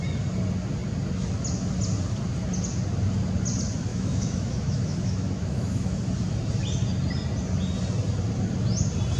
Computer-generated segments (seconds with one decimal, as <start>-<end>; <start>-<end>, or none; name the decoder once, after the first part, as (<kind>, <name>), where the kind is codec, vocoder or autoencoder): 3.9-6.0 (autoencoder, DAC-VAE)